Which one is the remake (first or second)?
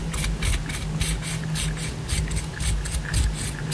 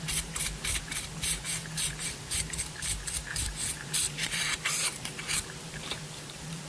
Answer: second